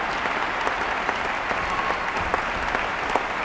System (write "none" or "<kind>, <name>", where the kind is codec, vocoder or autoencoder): none